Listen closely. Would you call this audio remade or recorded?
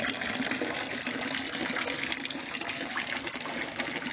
recorded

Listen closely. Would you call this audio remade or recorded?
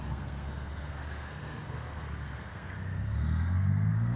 remade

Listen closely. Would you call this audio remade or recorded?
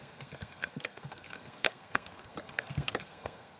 remade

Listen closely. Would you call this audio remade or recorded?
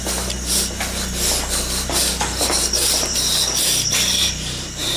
recorded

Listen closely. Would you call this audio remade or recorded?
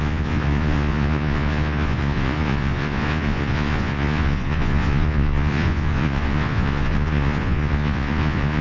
remade